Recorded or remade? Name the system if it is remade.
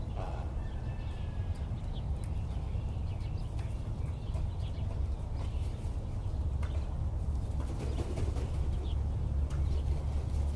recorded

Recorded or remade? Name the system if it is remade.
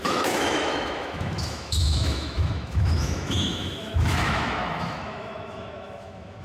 remade, autoencoder, DAC-VAE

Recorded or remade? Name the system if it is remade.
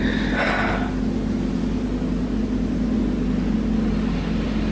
recorded